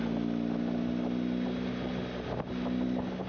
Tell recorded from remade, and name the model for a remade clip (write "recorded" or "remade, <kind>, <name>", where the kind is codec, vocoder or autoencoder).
recorded